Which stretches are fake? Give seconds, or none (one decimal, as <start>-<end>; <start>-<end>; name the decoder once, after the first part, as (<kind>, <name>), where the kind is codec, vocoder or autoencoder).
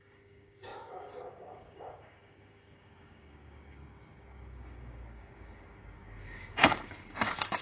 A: 0.0-7.6 (codec, DAC)